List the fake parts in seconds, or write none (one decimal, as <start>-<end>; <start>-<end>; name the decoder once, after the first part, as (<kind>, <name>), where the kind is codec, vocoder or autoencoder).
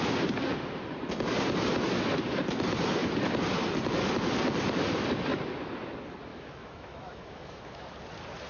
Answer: 6.3-7.6 (autoencoder, DAC-VAE)